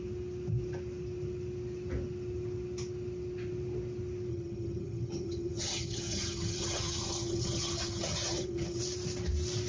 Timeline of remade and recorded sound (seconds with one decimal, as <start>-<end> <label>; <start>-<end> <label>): 0.0-4.3 recorded; 4.3-8.8 remade; 8.8-9.7 recorded